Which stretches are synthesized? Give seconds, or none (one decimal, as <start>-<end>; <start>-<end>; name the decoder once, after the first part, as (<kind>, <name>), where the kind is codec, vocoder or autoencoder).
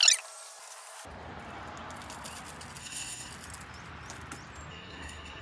2.8-3.3 (codec, SNAC); 4.7-5.4